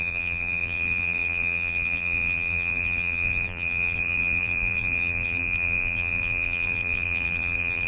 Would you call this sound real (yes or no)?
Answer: no